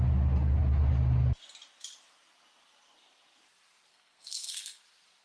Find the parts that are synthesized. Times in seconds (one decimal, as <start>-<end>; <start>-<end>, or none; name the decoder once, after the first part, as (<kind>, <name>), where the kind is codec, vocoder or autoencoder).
3.9-4.8 (codec, SNAC)